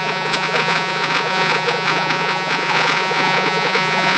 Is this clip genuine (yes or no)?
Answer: no